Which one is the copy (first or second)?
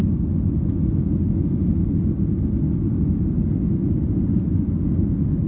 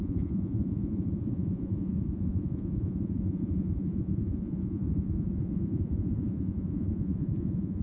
second